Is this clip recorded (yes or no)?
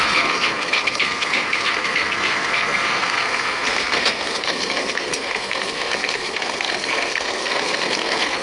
no